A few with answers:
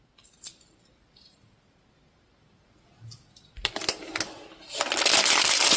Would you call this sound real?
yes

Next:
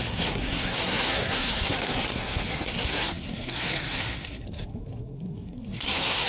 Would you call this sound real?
no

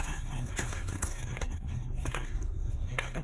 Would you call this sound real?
no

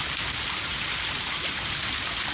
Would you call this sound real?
no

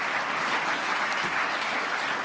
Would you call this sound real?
yes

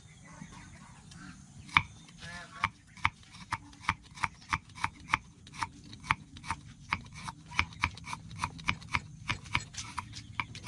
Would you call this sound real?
yes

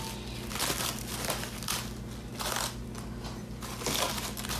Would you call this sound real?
yes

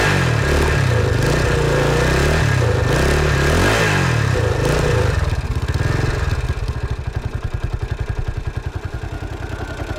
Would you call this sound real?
yes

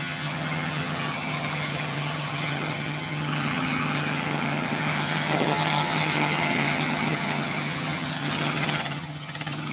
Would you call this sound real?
no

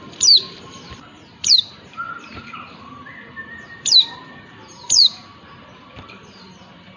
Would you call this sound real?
no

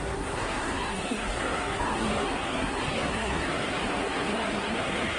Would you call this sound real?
no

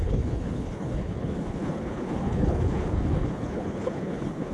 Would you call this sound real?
no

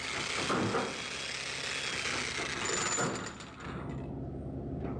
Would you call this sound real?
yes